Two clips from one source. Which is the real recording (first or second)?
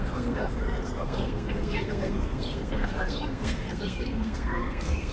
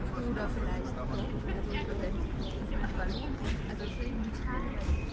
second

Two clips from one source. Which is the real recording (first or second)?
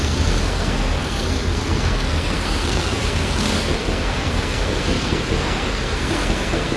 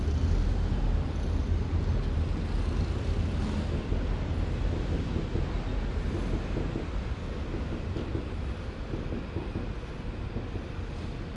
second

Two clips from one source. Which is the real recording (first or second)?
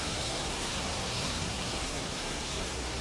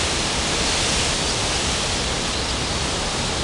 second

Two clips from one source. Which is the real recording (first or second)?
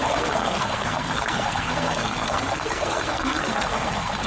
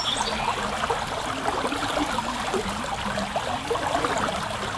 second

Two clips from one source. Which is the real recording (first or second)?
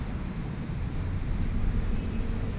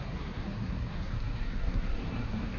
first